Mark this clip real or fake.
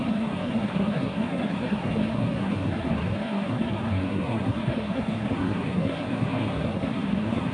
fake